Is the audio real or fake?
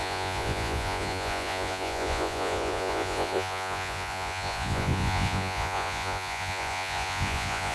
fake